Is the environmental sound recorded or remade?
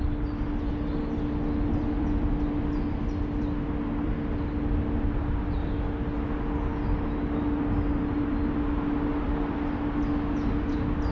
recorded